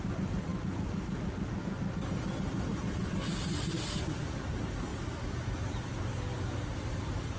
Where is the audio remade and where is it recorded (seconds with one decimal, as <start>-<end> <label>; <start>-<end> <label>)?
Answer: 0.0-7.4 recorded